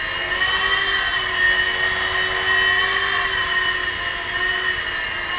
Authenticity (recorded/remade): recorded